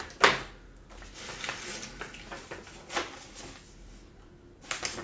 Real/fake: real